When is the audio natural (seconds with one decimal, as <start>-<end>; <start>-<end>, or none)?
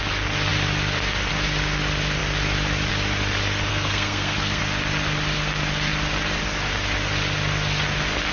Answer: 0.0-3.7; 4.6-8.3